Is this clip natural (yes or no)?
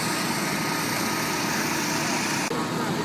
yes